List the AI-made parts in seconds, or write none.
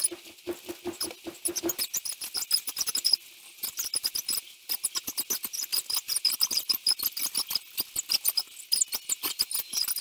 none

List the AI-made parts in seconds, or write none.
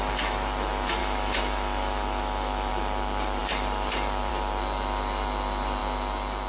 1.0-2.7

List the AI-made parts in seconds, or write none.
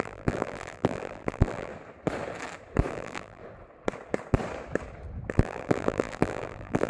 0.0-1.7; 2.9-3.4; 5.3-6.9